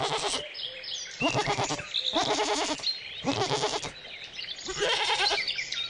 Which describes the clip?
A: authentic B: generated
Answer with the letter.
B